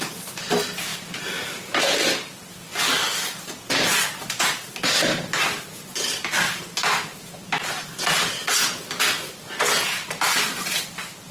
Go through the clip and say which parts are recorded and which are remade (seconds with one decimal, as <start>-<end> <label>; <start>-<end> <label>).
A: 0.0-11.3 recorded